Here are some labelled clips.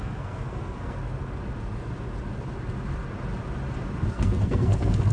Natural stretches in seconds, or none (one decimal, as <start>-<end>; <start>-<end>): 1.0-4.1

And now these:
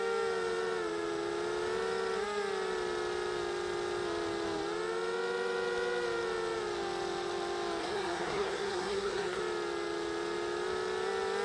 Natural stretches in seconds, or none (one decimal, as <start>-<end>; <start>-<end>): 0.0-7.8; 9.4-11.4

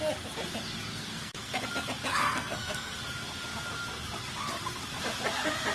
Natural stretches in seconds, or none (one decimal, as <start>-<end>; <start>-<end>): 0.0-0.9; 1.6-2.1; 3.0-5.7

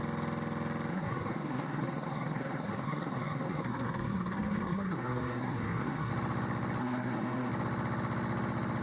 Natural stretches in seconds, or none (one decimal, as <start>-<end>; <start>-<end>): 0.0-0.9; 6.1-6.8; 7.5-8.8

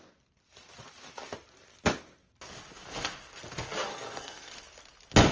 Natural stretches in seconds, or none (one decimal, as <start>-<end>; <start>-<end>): 0.0-3.9; 4.5-5.3

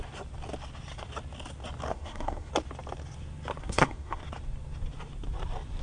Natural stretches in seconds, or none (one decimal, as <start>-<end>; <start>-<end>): 0.0-1.9; 2.5-3.6; 4.2-5.8

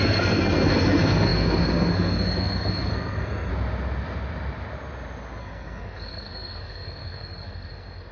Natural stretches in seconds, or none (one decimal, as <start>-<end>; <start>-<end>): 3.5-5.4

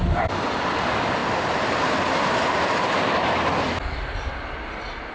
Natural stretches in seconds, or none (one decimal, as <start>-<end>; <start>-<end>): 0.0-5.1